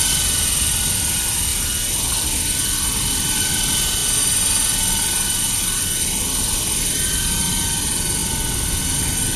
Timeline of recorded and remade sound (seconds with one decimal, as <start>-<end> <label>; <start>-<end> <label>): 0.0-9.4 recorded

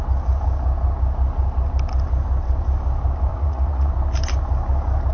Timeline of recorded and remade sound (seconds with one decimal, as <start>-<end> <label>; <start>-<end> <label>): 0.0-3.3 recorded; 3.3-3.9 remade; 3.9-5.1 recorded